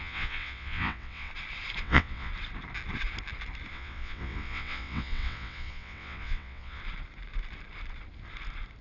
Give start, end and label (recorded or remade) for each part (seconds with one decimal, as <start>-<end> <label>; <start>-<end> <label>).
0.0-1.3 remade; 1.3-1.8 recorded; 1.8-2.3 remade; 2.3-3.7 recorded; 3.7-6.8 remade; 6.8-8.8 recorded